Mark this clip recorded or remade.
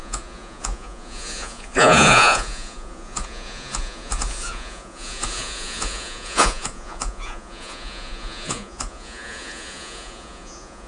remade